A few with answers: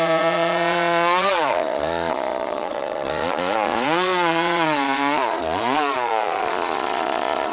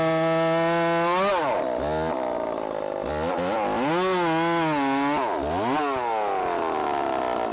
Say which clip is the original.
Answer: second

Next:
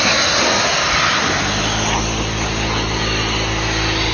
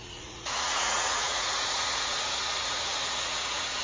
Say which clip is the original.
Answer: first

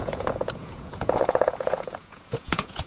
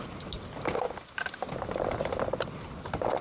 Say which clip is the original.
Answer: second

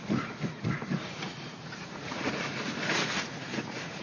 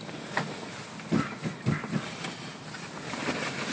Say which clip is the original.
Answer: second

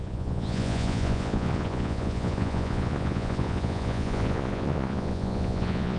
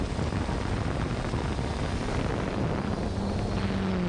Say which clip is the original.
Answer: second